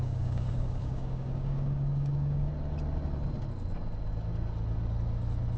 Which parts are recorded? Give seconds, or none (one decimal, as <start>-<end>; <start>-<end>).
2.5-5.6